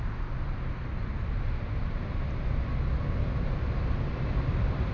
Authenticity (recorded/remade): recorded